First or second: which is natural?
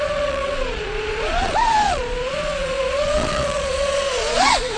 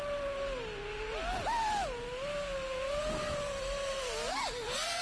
second